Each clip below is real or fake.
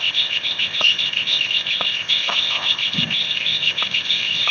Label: fake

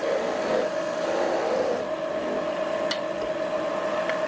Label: real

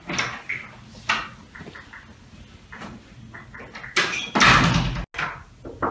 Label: real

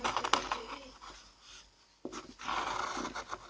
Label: real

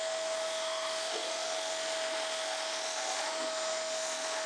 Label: fake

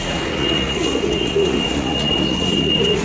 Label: fake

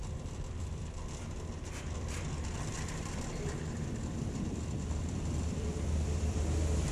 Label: fake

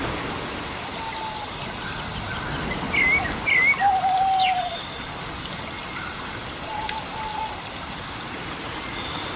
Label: real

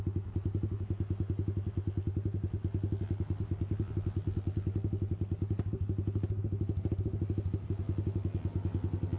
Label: real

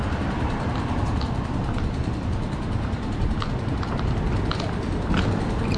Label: real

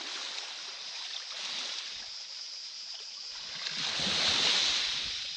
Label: real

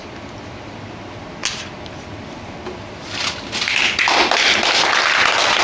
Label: real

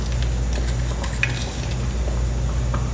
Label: real